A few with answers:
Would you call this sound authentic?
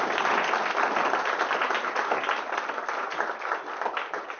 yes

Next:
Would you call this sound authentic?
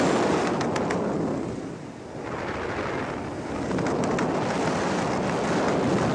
yes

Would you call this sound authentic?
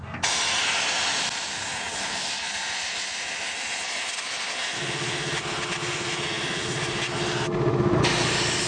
yes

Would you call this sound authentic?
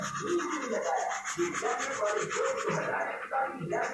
yes